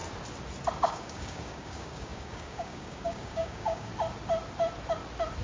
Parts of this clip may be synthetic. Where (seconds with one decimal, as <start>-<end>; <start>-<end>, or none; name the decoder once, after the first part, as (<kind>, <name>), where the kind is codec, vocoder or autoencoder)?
0.8-3.9 (codec, DAC)